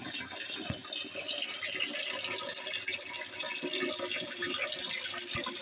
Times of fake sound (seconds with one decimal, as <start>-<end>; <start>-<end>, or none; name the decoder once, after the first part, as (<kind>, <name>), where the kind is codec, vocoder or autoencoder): none